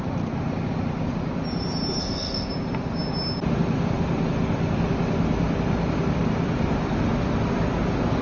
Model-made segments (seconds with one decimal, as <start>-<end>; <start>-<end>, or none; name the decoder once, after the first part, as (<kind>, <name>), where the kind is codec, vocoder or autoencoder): 2.0-2.5 (codec, ZipCodec)